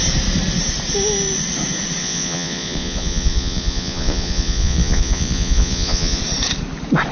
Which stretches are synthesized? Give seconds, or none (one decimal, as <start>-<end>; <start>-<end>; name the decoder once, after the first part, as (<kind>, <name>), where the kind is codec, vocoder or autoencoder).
2.0-6.2 (vocoder, Vocos)